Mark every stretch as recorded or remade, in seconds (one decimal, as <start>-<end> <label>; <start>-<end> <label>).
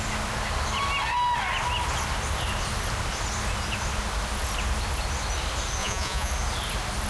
0.0-5.8 recorded; 5.8-6.3 remade; 6.3-7.1 recorded